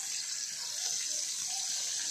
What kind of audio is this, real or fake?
real